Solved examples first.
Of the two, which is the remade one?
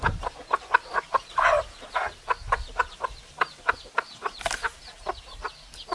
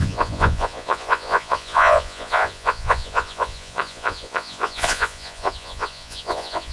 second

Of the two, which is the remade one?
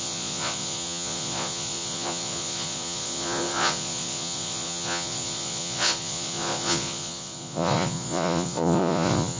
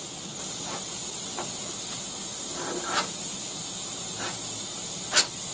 first